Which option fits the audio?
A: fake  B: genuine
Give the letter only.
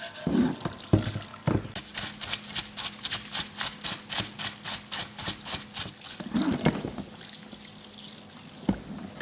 B